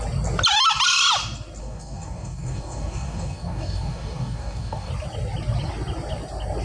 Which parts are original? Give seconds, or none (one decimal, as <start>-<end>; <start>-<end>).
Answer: 0.0-1.6; 4.9-6.6